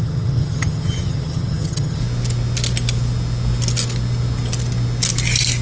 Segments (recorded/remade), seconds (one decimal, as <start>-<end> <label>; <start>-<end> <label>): 0.0-2.0 remade; 2.0-5.6 recorded